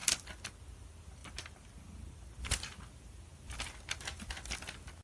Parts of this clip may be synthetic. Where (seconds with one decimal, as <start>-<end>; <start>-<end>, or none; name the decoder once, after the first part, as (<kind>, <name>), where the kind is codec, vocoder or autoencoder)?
none